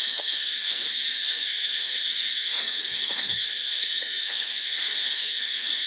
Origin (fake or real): fake